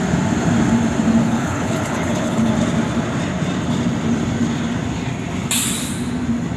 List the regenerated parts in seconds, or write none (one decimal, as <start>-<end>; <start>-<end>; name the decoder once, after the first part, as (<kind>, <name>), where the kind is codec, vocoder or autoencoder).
1.2-2.5 (codec, HILCodec)